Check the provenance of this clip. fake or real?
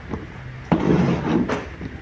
fake